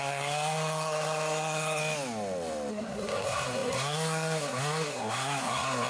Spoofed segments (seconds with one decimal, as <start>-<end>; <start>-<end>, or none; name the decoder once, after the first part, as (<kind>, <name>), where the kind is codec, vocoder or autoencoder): 0.0-1.8 (codec, SNAC); 2.7-5.9